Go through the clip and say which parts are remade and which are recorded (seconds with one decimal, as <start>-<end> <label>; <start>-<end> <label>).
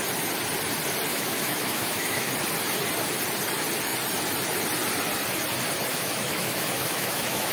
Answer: 0.0-1.1 recorded; 1.1-2.3 remade; 2.3-5.9 recorded; 5.9-7.5 remade